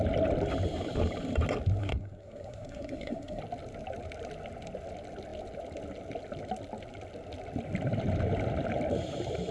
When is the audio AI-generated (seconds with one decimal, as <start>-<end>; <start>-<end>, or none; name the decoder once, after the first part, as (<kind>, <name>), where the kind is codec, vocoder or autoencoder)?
1.8-3.4 (codec, SNAC)